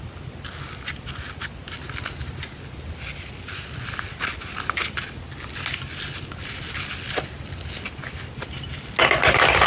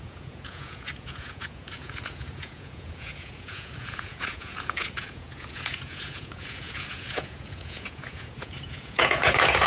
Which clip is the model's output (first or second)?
second